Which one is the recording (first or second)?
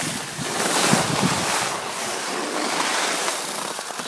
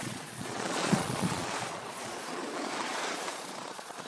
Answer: first